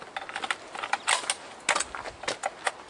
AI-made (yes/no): no